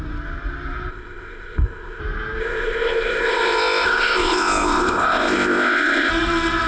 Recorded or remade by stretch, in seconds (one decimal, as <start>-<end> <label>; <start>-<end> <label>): 0.0-0.9 recorded; 0.9-2.0 remade; 2.0-2.4 recorded; 2.4-6.1 remade; 6.1-6.7 recorded